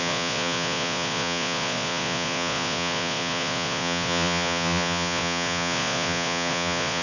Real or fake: fake